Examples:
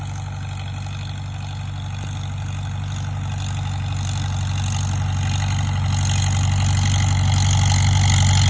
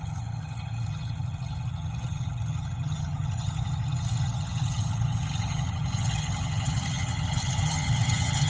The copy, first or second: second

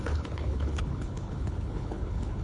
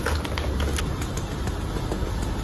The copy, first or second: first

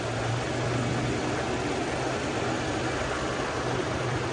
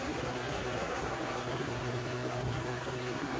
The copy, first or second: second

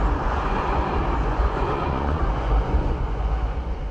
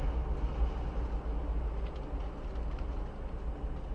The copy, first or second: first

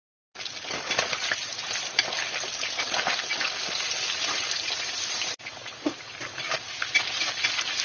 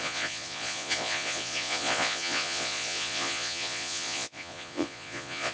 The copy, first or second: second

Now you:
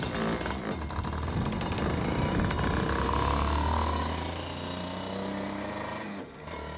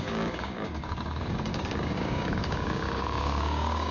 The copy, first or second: second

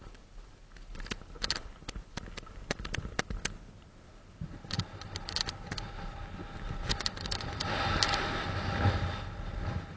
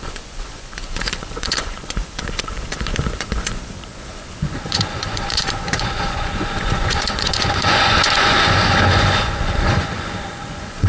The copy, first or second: second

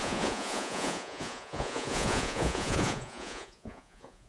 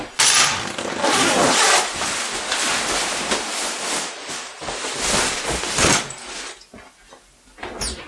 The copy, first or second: first